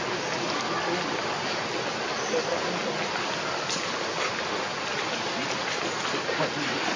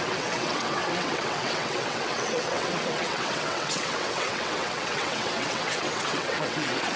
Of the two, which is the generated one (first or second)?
second